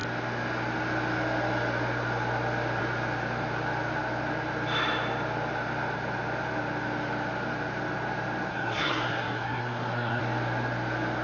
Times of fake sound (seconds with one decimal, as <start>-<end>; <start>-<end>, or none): 8.5-10.2